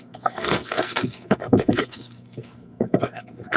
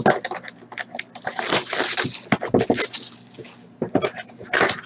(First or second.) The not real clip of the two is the first